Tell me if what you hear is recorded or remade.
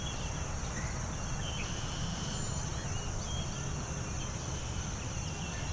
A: recorded